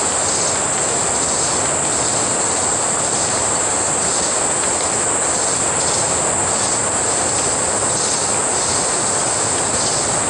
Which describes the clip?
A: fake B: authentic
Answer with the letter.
B